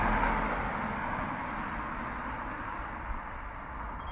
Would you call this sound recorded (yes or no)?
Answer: yes